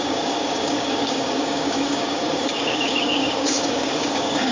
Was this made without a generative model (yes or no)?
no